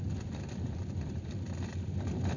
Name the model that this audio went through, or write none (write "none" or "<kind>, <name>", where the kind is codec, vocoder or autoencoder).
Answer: none